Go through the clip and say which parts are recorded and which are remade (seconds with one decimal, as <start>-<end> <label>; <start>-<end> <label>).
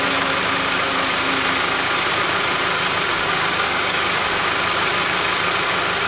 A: 0.0-3.1 recorded; 3.1-4.4 remade; 4.4-6.1 recorded